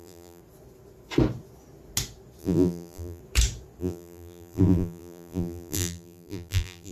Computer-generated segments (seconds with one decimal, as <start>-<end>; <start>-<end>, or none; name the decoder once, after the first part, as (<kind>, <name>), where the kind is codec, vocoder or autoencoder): 0.0-0.4 (vocoder, BigVGAN v2); 2.4-3.2; 3.8-6.9